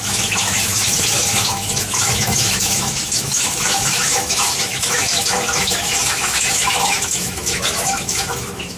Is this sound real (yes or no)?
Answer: no